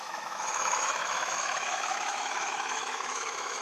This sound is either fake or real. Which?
fake